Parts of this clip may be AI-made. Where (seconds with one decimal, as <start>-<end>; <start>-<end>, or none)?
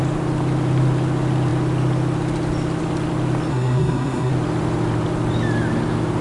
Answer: 3.5-4.3